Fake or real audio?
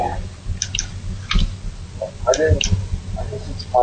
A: real